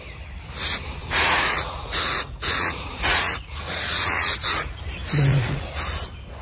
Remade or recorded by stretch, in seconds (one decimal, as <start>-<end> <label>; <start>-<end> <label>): 0.0-1.0 recorded; 1.0-4.8 remade; 4.8-5.3 recorded; 5.3-5.8 remade; 5.8-6.4 recorded